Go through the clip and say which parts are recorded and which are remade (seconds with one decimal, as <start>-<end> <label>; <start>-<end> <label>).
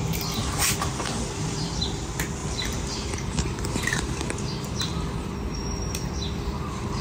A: 0.0-2.4 recorded; 2.4-4.8 remade; 4.8-7.0 recorded